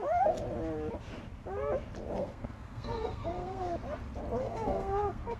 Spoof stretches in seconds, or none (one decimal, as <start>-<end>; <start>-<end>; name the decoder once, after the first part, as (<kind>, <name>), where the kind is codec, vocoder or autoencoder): 2.2-3.7 (codec, SNAC); 4.4-5.4